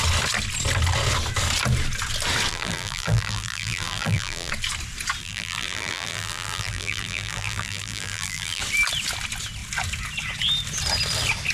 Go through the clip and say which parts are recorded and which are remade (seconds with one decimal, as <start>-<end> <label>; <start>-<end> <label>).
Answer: 0.0-2.5 recorded; 2.5-4.5 remade; 4.5-5.2 recorded; 5.2-8.6 remade; 8.6-11.5 recorded